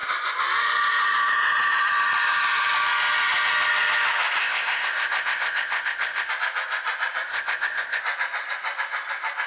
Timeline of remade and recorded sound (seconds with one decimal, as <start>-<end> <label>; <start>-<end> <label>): 0.0-4.4 recorded; 4.4-6.3 remade; 6.3-7.3 recorded; 7.3-8.0 remade; 8.0-9.5 recorded